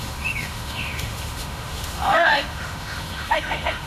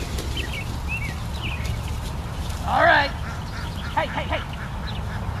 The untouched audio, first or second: second